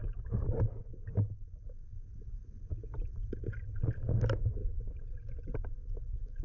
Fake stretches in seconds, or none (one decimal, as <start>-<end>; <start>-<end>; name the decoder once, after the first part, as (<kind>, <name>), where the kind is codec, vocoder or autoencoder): 0.9-3.4 (vocoder, BigVGAN v2); 4.6-5.8